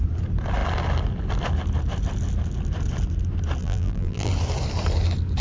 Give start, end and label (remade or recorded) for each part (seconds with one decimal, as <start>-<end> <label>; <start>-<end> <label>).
0.0-3.6 recorded; 3.6-4.3 remade; 4.3-5.4 recorded